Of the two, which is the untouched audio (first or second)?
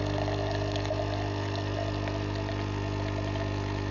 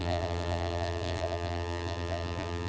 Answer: first